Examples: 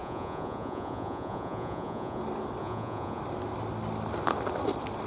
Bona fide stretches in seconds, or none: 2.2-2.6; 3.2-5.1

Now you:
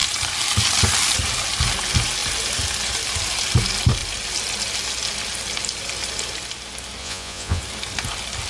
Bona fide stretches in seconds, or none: 0.0-7.0; 7.6-8.5

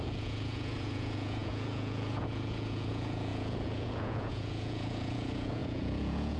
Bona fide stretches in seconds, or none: none

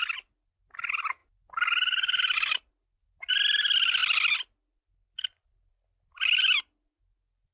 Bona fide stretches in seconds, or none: 0.0-7.5